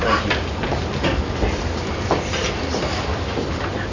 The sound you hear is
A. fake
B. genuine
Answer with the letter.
B